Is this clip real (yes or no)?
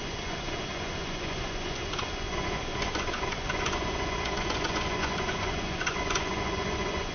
no